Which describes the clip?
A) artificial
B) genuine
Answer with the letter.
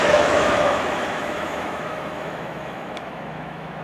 A